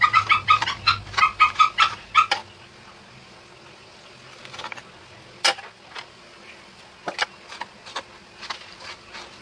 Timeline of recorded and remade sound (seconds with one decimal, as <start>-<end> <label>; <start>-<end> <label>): 0.0-9.4 recorded